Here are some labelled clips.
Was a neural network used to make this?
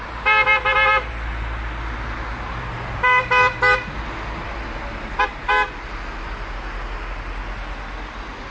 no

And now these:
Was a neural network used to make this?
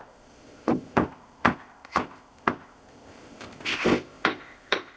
yes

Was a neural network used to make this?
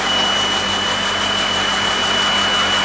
no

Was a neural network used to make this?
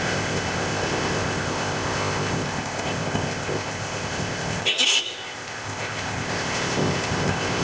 yes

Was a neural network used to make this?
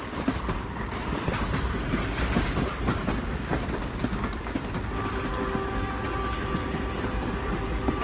no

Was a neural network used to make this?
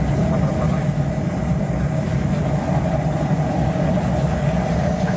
no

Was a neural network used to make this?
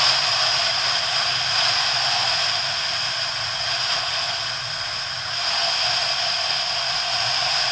no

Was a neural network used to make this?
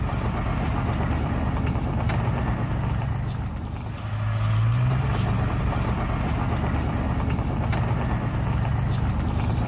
no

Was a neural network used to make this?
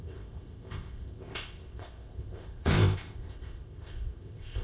yes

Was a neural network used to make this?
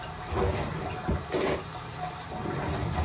no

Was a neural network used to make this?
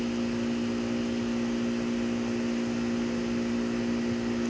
no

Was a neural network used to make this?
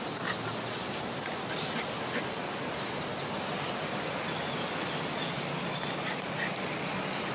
no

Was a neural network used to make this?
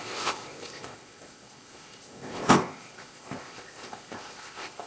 yes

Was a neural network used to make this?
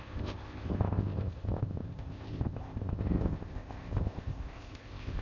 yes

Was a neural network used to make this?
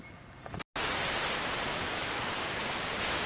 no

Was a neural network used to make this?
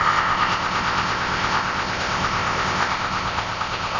yes